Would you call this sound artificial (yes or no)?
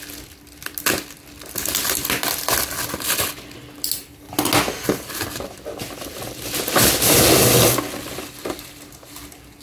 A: no